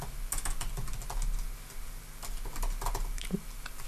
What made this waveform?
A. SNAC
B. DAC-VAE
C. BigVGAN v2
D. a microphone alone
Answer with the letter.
D